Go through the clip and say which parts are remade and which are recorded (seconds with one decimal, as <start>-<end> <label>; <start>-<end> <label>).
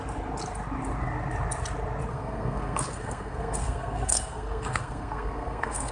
0.0-2.1 recorded; 2.1-5.9 remade